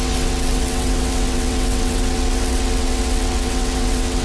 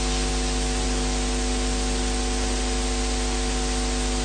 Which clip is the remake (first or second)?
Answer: first